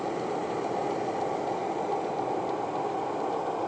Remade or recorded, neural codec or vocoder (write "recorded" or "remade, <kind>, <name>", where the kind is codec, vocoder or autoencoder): recorded